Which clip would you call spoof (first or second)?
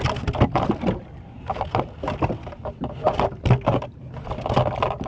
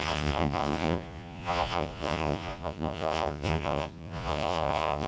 second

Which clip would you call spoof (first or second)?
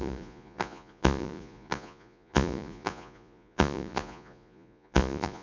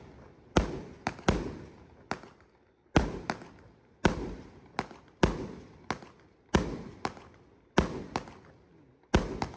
first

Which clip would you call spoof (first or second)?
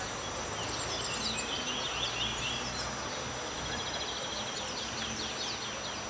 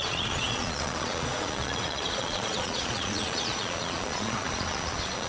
second